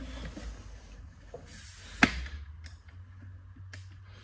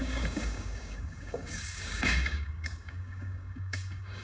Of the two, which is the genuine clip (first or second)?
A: first